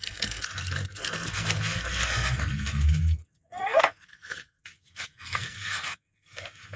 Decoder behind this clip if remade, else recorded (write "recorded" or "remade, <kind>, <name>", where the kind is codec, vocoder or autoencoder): remade, codec, SNAC